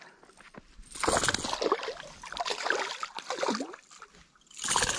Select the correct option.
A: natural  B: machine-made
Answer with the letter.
A